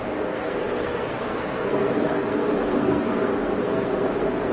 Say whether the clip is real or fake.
fake